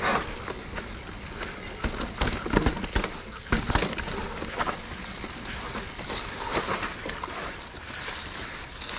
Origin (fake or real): real